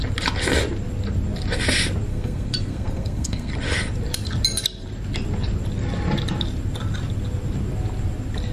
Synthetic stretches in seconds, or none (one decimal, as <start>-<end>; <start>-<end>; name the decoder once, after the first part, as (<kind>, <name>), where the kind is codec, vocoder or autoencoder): 2.1-3.5 (codec, SNAC)

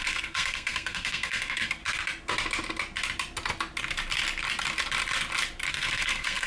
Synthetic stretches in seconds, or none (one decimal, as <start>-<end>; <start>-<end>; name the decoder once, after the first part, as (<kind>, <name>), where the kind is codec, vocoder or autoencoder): 0.0-1.8 (codec, SNAC); 5.7-6.5

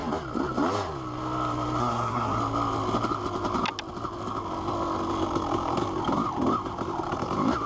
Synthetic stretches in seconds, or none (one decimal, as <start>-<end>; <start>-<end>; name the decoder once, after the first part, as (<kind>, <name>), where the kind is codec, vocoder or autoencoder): 1.8-2.4 (codec, SNAC)

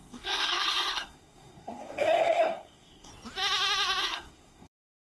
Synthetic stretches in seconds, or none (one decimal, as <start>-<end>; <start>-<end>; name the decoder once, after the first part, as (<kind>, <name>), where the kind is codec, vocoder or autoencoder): 0.0-3.1 (codec, SNAC); 4.0-5.1